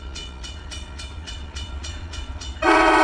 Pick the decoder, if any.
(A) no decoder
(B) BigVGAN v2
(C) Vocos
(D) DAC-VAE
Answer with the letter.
C